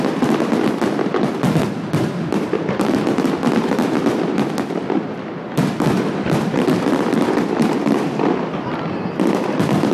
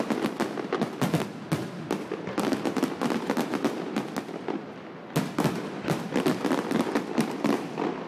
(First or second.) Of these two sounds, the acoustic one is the second